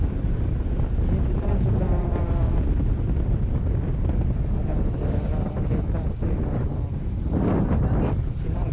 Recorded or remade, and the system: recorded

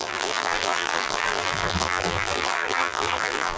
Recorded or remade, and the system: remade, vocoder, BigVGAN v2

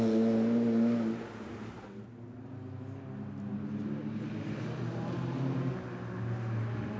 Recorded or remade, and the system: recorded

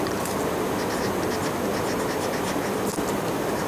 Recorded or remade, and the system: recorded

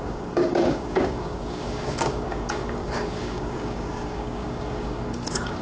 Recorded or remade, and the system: remade, codec, DAC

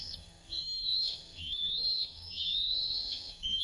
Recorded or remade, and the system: remade, codec, SNAC